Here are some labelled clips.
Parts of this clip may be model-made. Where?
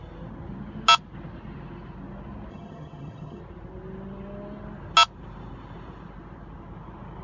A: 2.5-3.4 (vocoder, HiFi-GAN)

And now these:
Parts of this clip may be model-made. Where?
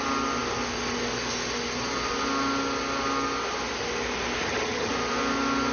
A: 4.4-4.9 (vocoder, HiFi-GAN)